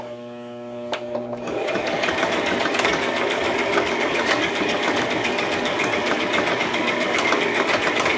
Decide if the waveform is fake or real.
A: fake